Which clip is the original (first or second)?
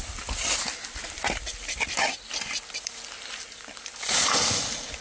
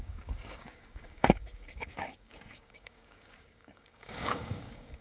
first